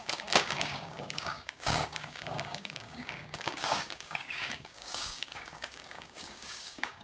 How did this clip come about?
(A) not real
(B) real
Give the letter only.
A